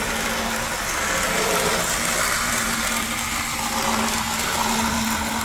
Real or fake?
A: real